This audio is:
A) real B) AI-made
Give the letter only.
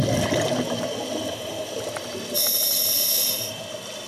A